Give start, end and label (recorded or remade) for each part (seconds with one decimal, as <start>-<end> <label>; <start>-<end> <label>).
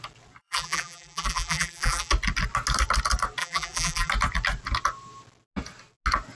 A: 0.0-0.4 recorded; 0.4-2.1 remade; 2.1-3.4 recorded; 3.4-4.1 remade; 4.1-6.4 recorded